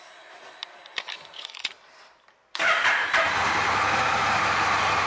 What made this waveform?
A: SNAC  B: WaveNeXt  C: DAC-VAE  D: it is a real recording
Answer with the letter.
D